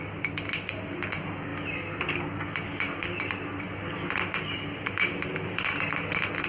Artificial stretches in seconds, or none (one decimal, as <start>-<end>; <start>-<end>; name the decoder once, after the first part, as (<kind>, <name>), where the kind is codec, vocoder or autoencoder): none